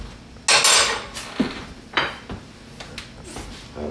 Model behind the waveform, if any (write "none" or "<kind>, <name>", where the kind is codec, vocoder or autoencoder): none